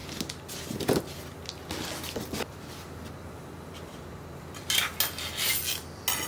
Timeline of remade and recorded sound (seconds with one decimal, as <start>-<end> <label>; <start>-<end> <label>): 0.0-6.3 recorded